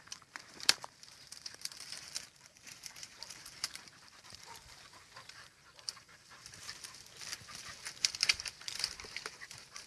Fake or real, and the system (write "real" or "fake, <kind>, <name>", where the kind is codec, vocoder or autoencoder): fake, vocoder, BigVGAN v2